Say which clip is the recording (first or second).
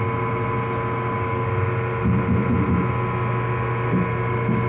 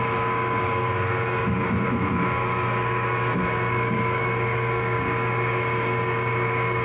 first